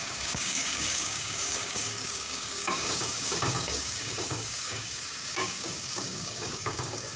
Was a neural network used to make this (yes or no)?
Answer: yes